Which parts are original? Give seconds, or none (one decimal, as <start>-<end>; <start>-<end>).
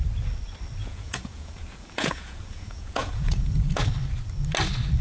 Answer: 0.0-0.8; 3.8-5.0